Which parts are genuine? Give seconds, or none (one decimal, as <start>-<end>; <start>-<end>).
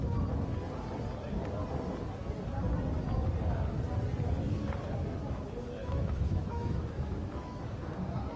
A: 0.0-5.8; 7.6-8.4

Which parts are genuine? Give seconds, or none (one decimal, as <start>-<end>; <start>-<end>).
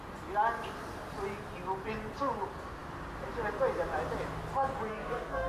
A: 0.0-4.9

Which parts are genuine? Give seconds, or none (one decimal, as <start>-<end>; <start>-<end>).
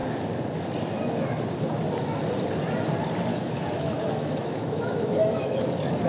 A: 0.0-3.3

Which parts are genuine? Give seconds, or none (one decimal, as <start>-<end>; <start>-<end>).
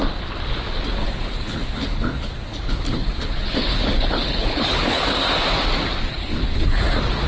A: 0.0-1.0; 5.0-6.1; 6.8-7.3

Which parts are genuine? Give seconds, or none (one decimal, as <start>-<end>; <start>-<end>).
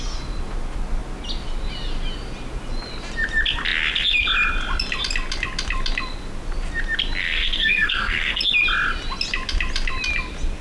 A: 0.0-7.2; 8.4-10.6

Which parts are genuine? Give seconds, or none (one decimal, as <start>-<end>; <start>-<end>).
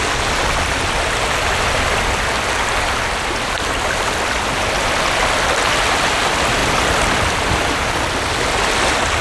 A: 0.0-9.2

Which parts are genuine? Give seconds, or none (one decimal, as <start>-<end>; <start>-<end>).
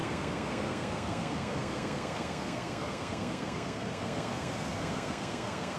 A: none